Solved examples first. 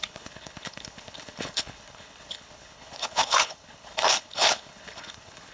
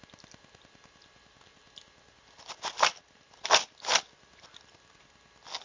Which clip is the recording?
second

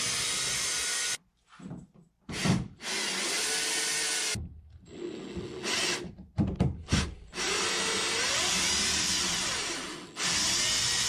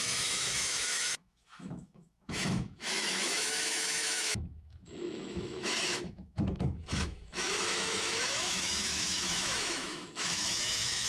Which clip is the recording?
first